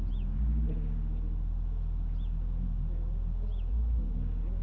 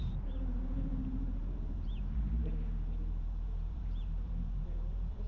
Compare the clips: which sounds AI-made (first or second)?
second